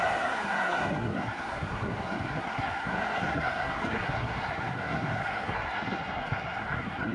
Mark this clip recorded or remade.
remade